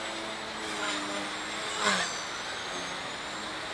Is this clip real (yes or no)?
yes